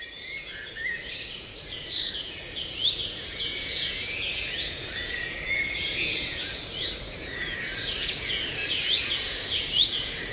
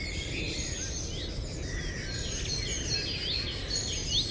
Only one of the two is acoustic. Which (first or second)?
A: second